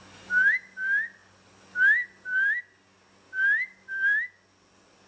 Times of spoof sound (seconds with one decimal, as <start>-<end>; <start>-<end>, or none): none

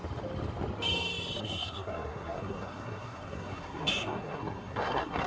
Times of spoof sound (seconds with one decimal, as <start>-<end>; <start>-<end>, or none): 1.4-5.3

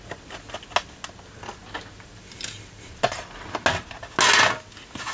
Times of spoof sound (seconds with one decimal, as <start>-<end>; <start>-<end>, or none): none

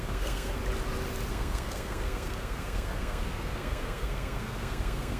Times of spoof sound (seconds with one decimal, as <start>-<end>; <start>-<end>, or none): 0.0-0.6; 1.3-5.2

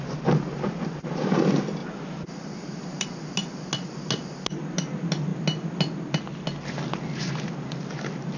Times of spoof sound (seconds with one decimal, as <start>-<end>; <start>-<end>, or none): none

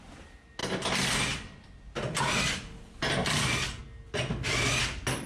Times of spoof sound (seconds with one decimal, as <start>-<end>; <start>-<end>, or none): none